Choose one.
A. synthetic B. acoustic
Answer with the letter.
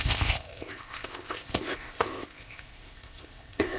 A